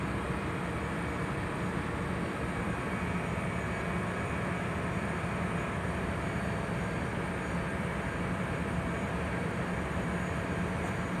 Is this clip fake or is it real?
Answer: real